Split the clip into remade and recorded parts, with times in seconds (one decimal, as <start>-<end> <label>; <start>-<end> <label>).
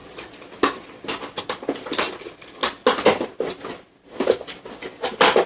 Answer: 0.0-5.5 recorded